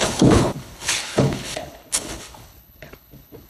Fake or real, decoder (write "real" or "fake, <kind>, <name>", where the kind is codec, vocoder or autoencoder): fake, codec, HILCodec